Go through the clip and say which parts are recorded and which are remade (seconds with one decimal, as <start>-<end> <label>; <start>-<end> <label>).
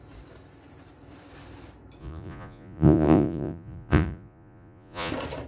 0.0-2.0 recorded; 2.0-5.1 remade; 5.1-5.5 recorded